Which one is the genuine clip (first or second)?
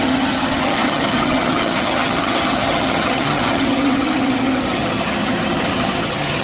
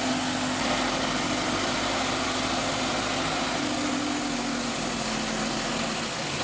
second